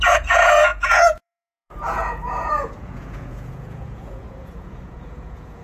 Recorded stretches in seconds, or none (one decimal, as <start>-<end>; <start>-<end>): none

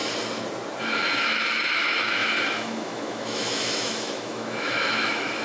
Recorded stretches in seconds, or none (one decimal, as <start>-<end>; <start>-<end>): 0.0-0.8